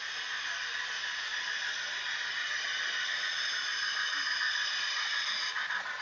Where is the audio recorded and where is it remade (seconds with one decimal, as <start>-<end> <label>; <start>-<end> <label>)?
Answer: 0.0-6.0 recorded

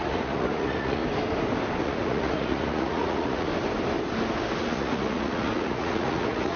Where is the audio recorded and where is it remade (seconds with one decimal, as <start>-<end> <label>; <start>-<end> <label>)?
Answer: 0.0-1.0 remade; 1.0-1.8 recorded; 1.8-3.5 remade; 3.5-4.6 recorded; 4.6-6.6 remade

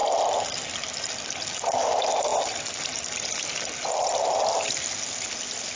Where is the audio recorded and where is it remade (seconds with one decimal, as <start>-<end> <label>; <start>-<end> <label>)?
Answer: 0.0-5.8 recorded

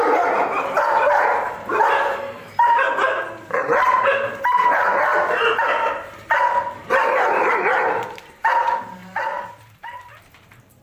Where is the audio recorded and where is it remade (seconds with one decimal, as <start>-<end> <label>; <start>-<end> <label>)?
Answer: 0.0-5.1 remade; 5.1-6.9 recorded; 6.9-9.0 remade; 9.0-9.5 recorded; 9.5-10.8 remade

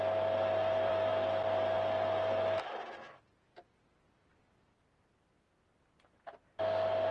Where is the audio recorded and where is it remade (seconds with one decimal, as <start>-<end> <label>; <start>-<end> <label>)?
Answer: 0.0-1.1 remade; 1.1-3.2 recorded; 3.2-5.7 remade; 5.7-7.1 recorded

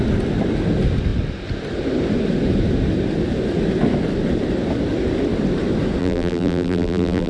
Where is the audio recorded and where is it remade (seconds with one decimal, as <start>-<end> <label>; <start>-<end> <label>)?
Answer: 0.0-6.0 recorded; 6.0-7.3 remade